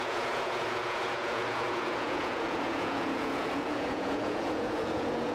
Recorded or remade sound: remade